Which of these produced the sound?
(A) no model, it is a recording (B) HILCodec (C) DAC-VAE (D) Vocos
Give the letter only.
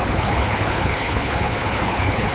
B